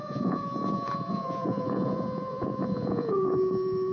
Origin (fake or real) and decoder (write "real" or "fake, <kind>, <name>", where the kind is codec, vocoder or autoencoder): fake, vocoder, Vocos